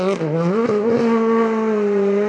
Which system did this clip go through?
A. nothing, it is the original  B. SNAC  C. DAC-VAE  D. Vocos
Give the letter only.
A